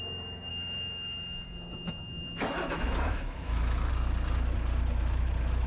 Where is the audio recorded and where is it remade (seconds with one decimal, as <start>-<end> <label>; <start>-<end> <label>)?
0.0-0.5 recorded; 0.5-3.9 remade; 3.9-5.7 recorded